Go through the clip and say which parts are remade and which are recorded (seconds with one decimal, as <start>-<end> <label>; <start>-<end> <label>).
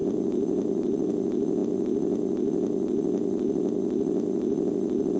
0.0-1.1 remade; 1.1-5.2 recorded